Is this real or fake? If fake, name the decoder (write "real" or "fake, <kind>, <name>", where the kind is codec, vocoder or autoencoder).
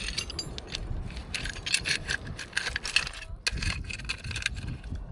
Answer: real